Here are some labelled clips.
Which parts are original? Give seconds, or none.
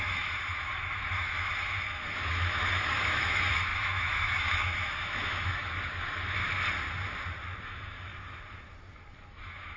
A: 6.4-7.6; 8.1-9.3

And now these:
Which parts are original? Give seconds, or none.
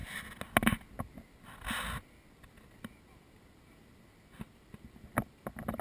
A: 0.0-5.8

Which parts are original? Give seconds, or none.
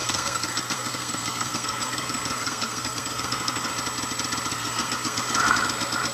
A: 3.7-4.5; 5.2-6.1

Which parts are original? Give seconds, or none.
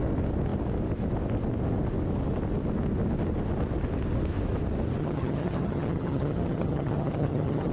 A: 0.0-5.0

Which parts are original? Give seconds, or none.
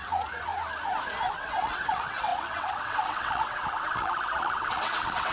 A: 0.5-1.3